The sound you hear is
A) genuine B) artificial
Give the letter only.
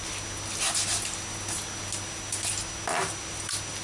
A